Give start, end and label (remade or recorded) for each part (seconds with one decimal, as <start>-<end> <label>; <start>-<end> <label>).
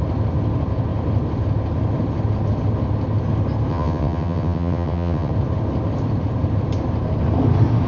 0.0-3.7 recorded; 3.7-5.3 remade; 5.3-7.9 recorded